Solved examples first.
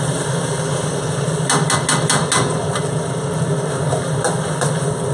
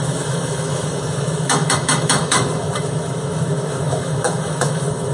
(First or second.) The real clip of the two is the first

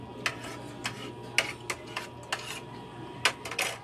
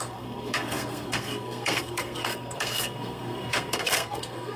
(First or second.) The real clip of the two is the first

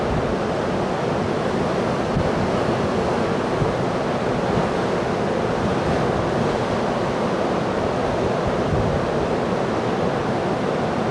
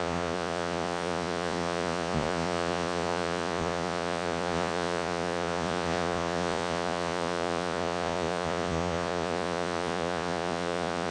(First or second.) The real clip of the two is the first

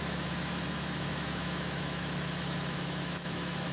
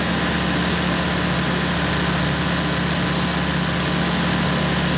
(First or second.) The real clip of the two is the second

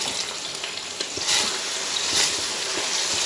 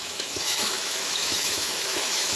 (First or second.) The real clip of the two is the first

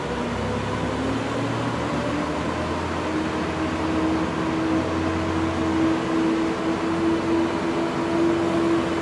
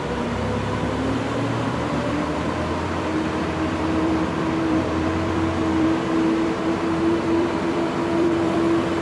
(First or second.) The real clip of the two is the first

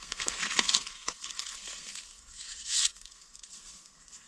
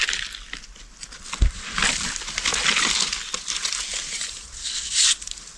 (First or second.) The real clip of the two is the second